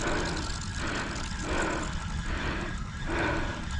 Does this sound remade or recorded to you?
recorded